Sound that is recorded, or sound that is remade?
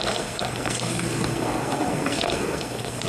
remade